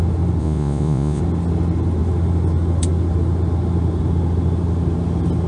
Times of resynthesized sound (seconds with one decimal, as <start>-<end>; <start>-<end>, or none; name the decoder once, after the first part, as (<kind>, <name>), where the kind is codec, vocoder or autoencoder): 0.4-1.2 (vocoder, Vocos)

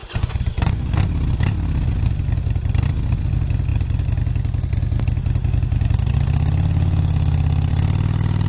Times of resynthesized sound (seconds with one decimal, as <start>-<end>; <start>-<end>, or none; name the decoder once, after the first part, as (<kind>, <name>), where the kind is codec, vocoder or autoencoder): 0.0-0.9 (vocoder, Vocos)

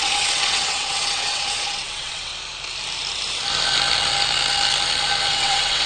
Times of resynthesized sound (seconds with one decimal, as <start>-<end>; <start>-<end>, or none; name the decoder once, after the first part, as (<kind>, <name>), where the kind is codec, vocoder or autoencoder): 0.0-2.3 (vocoder, WaveNeXt); 5.3-5.9

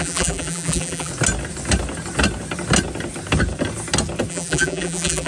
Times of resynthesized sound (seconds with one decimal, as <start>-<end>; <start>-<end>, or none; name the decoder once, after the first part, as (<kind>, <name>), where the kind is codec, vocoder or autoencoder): 0.0-1.1 (vocoder, BigVGAN v2); 4.3-5.3

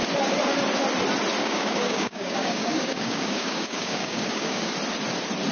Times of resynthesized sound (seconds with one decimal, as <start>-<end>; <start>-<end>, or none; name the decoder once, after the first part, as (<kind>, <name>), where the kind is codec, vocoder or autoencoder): 1.4-4.7 (codec, DAC)

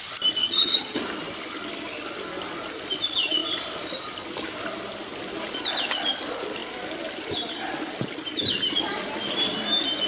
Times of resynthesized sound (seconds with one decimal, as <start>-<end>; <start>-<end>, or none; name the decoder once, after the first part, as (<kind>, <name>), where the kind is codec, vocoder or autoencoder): 0.4-1.0 (vocoder, HiFi-GAN)

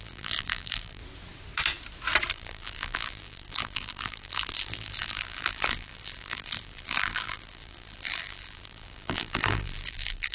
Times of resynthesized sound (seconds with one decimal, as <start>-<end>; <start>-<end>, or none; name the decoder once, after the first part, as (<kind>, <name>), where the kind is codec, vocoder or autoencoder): 0.0-1.0 (vocoder, BigVGAN v2); 2.3-10.3